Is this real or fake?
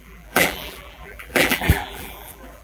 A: fake